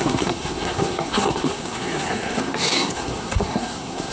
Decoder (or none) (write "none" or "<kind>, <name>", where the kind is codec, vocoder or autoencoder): codec, SNAC